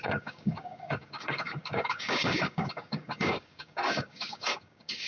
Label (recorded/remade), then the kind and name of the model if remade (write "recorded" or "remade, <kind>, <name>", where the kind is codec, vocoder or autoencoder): remade, codec, DAC